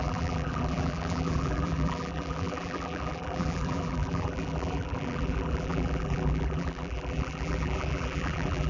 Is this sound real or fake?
fake